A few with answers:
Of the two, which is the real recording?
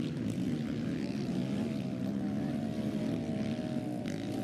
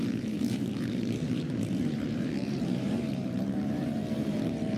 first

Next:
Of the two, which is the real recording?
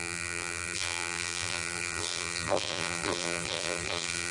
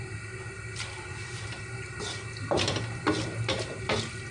second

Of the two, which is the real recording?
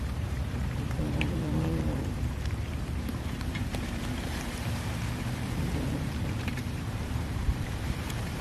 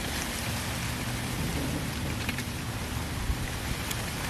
second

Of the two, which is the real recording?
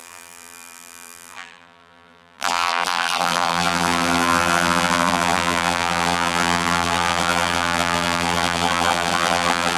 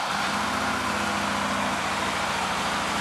second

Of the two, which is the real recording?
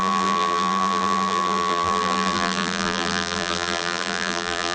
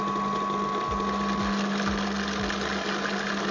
second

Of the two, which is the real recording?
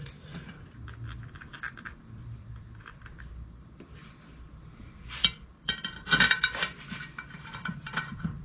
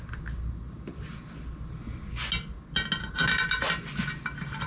second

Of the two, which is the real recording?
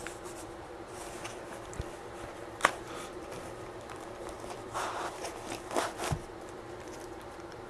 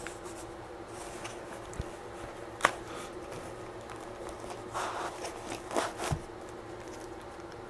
second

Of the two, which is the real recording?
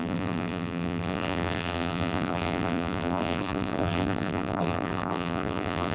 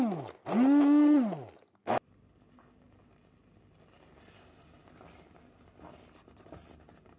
second